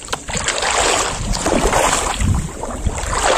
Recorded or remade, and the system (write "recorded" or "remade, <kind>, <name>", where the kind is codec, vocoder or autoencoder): recorded